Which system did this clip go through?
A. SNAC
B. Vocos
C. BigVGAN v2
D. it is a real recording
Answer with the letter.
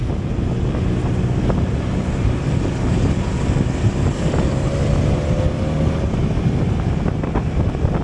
D